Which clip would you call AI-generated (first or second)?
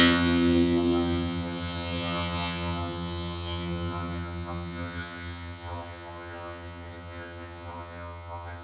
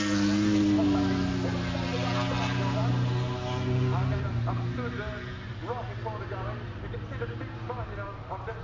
first